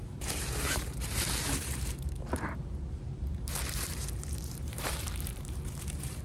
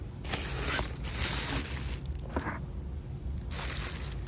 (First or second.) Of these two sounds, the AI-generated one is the first